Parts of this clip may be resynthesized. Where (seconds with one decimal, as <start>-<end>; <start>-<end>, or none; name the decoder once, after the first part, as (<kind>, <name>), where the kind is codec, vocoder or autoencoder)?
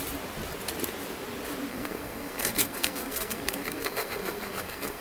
1.7-5.0 (codec, SNAC)